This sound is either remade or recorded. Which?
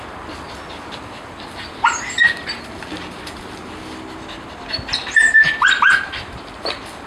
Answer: recorded